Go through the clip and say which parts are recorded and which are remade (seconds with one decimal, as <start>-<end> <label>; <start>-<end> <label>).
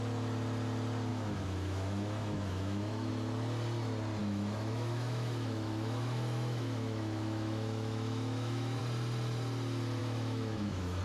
0.0-1.1 recorded; 1.1-3.1 remade; 3.1-4.2 recorded; 4.2-8.8 remade; 8.8-10.0 recorded; 10.0-11.0 remade